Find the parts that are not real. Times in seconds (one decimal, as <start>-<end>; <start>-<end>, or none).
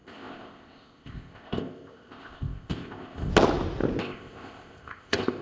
0.0-3.3; 4.0-5.4